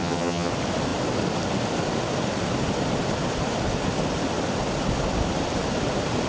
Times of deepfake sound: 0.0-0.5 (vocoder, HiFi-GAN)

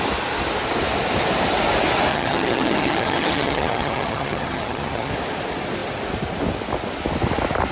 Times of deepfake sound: 2.1-5.1 (vocoder, HiFi-GAN)

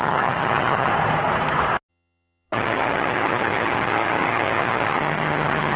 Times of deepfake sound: 0.0-0.9 (vocoder, HiFi-GAN); 1.9-5.8

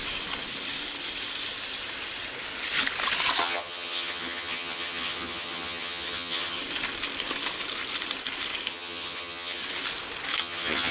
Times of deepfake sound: 3.4-6.6 (vocoder, HiFi-GAN); 8.7-9.6; 10.4-10.9